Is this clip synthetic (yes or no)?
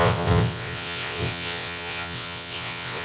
yes